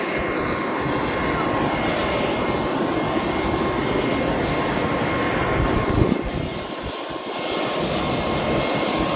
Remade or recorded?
recorded